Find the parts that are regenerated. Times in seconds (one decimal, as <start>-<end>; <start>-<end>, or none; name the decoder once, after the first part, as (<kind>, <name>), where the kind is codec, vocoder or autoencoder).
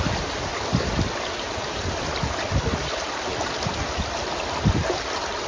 0.0-0.5 (vocoder, BigVGAN v2); 2.3-5.5